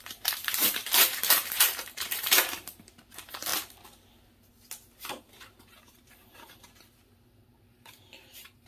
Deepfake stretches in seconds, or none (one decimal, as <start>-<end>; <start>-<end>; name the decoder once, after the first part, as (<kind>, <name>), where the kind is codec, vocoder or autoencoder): 0.0-3.5 (vocoder, BigVGAN v2); 5.2-8.7